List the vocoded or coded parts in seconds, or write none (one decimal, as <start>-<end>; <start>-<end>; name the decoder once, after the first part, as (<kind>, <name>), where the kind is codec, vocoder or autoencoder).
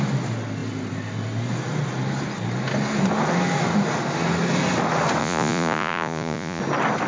5.2-6.6 (vocoder, Vocos)